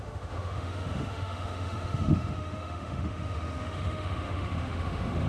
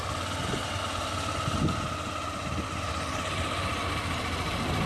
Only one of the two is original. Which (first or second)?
second